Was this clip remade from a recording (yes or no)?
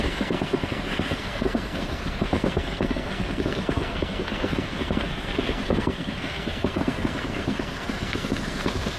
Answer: yes